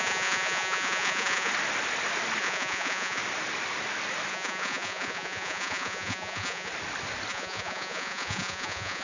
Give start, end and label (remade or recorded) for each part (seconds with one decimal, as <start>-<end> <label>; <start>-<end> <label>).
0.0-1.5 remade; 1.5-2.4 recorded; 2.4-3.2 remade; 3.2-4.3 recorded; 4.3-6.7 remade; 6.7-7.3 recorded; 7.3-9.0 remade